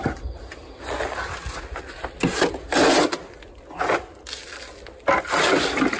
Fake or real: real